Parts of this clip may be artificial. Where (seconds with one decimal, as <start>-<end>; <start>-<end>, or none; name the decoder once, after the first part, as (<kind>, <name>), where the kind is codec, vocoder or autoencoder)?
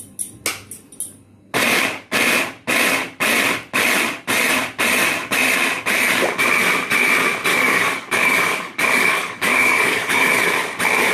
7.5-10.3 (codec, DAC)